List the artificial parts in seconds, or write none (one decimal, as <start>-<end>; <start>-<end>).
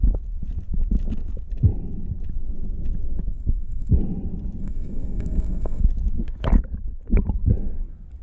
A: 3.3-3.9; 4.6-5.8